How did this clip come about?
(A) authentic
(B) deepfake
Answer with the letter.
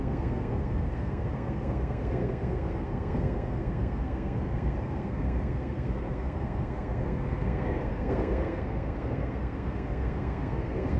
B